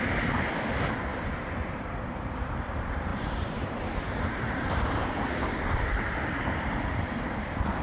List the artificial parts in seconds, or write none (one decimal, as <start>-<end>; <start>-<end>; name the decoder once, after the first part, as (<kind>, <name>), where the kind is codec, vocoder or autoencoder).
1.1-2.5 (vocoder, BigVGAN v2); 3.1-5.4

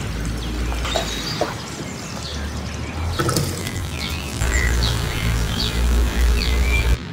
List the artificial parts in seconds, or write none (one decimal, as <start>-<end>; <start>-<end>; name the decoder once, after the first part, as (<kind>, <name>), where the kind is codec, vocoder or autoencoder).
3.6-7.1 (vocoder, BigVGAN v2)

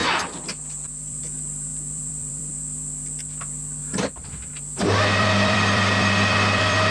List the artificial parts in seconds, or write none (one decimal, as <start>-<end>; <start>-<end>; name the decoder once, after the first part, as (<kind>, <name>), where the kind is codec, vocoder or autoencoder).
0.0-1.2 (vocoder, BigVGAN v2); 1.7-2.5; 3.8-6.9

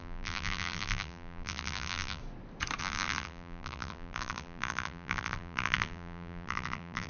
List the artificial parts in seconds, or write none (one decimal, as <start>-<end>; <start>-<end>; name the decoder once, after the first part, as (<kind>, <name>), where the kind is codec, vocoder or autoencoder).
0.0-2.2 (vocoder, BigVGAN v2); 2.8-7.1

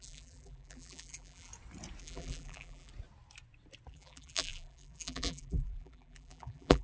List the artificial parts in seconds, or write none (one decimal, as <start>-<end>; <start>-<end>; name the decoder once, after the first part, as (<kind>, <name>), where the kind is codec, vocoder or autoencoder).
0.0-1.5 (vocoder, BigVGAN v2); 2.0-2.9; 3.9-6.8

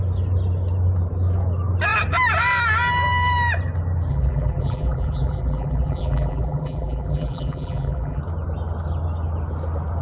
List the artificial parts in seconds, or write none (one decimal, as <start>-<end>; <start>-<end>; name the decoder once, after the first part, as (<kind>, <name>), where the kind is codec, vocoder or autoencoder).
4.1-8.2 (vocoder, BigVGAN v2)

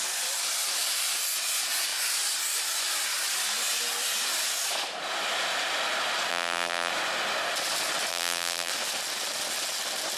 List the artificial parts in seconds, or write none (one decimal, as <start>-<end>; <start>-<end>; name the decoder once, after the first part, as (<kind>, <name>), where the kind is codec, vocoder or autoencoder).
6.3-6.9 (vocoder, BigVGAN v2); 8.1-8.7

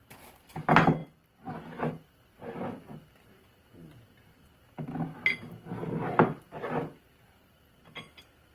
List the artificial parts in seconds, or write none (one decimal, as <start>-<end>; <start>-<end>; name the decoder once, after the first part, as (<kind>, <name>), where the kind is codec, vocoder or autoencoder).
none